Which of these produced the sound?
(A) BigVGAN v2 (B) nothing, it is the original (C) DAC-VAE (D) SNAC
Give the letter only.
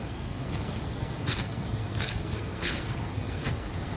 D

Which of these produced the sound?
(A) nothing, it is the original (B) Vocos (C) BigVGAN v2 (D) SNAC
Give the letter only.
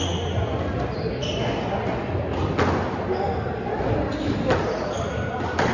A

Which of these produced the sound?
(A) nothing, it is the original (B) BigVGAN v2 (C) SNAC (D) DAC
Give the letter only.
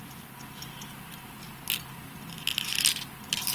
A